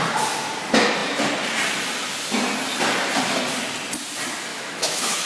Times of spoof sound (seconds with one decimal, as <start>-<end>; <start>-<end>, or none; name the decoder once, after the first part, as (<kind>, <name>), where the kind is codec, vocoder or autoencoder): 4.5-5.3 (autoencoder, DAC-VAE)